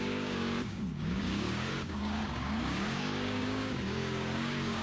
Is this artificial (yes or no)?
yes